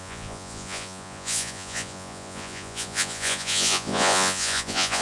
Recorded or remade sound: remade